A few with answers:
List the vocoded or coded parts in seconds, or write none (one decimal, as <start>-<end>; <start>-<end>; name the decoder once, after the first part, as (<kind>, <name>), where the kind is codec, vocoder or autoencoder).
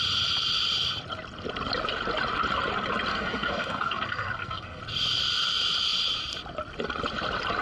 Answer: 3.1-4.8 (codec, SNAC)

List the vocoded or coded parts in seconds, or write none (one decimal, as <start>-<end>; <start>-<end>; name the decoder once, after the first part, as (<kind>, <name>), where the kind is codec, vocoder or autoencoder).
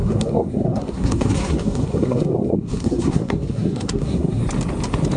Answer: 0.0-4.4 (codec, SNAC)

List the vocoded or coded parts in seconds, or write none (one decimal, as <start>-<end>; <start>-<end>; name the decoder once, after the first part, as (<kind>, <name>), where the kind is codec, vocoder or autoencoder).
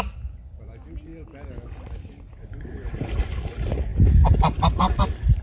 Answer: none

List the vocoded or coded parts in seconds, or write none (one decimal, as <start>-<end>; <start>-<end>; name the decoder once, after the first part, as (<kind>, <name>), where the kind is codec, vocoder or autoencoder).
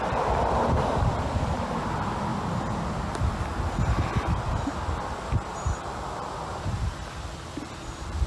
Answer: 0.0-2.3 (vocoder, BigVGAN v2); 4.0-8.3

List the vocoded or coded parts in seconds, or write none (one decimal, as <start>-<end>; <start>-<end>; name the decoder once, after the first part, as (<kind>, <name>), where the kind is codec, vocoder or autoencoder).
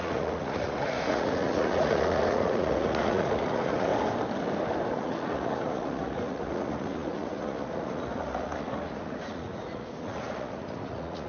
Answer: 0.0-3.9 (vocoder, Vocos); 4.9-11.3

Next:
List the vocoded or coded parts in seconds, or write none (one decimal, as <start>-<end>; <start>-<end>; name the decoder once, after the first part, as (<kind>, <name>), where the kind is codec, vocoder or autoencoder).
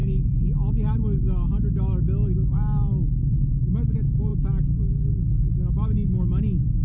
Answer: 0.0-0.7 (autoencoder, DAC-VAE)